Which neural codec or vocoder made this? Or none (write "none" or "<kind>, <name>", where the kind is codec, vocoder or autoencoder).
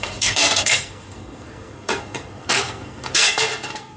codec, SNAC